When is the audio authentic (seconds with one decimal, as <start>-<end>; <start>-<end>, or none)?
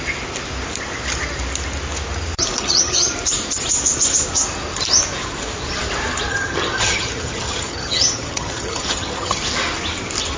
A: 0.0-2.6; 3.1-6.3; 9.4-10.4